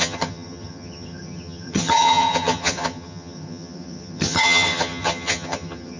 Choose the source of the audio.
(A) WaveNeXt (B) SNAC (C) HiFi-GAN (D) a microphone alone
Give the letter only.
C